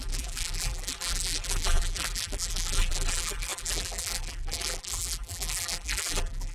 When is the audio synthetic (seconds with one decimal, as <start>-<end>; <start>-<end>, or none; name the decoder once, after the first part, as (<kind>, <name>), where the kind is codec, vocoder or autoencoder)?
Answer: 0.0-6.5 (vocoder, BigVGAN v2)